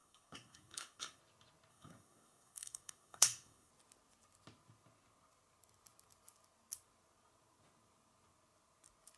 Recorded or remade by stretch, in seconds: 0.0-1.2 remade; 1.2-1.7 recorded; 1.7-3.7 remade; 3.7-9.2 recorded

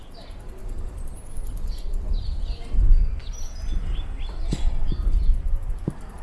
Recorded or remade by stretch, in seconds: 0.0-6.2 recorded

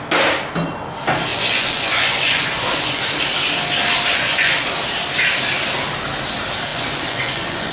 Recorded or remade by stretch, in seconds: 0.0-1.3 recorded; 1.3-3.0 remade; 3.0-4.1 recorded; 4.1-4.7 remade; 4.7-6.7 recorded; 6.7-7.7 remade

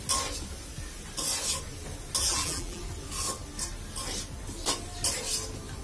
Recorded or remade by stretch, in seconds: 0.0-2.2 recorded; 2.2-2.8 remade; 2.8-5.8 recorded

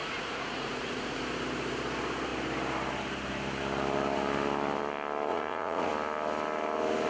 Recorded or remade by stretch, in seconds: 0.0-1.2 remade; 1.2-5.3 recorded; 5.3-5.9 remade; 5.9-7.1 recorded

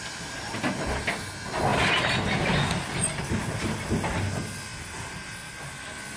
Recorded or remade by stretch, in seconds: 0.0-4.7 recorded; 4.7-5.5 remade; 5.5-6.2 recorded

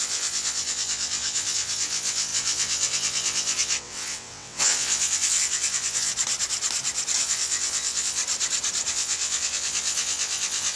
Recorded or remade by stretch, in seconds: 0.0-6.1 remade; 6.1-7.2 recorded; 7.2-8.2 remade; 8.2-8.9 recorded; 8.9-10.8 remade